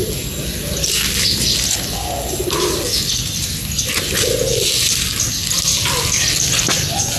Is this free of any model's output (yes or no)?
yes